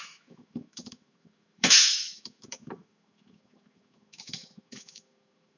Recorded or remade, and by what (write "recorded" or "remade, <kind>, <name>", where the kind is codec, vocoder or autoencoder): remade, autoencoder, DAC-VAE